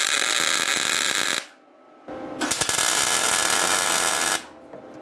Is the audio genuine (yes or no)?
yes